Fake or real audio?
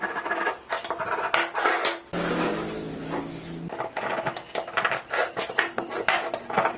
real